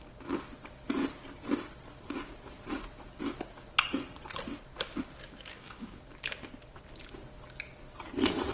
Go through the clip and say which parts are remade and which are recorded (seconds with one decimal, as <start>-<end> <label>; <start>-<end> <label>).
0.0-5.5 recorded; 5.5-6.0 remade; 6.0-8.5 recorded